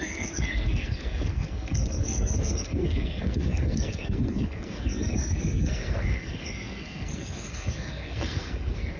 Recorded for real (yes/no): no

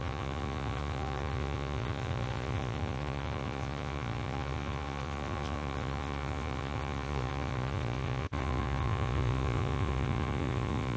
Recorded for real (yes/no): no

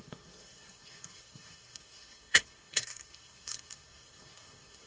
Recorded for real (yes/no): no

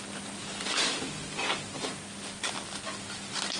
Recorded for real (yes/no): yes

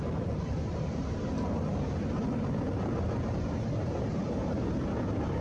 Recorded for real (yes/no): no